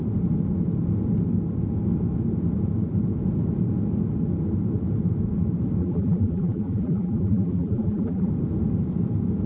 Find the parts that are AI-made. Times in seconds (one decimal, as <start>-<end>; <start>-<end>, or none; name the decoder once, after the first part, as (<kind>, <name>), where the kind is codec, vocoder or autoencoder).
5.8-8.3 (vocoder, BigVGAN v2)